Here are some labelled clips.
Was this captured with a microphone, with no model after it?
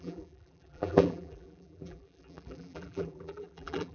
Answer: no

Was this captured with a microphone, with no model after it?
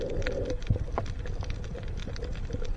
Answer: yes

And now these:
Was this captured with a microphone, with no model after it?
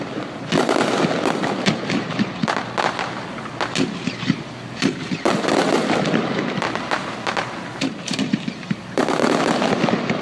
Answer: yes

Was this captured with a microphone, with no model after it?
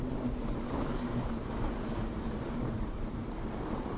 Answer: no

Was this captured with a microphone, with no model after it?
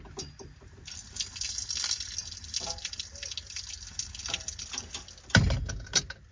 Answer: yes